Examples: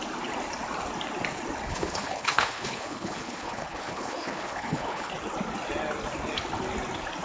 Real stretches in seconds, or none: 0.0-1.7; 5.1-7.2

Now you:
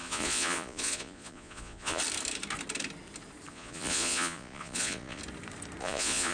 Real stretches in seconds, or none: 2.0-3.5; 5.2-5.8

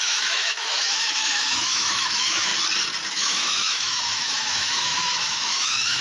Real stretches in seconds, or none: 2.5-3.1